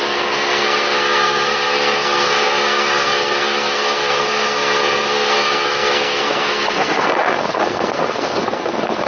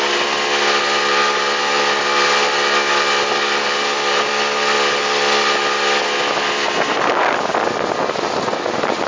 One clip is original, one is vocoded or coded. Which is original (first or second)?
second